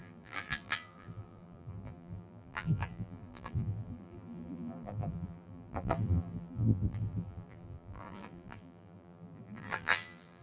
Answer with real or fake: fake